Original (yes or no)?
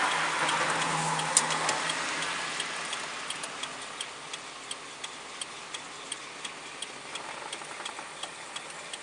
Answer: yes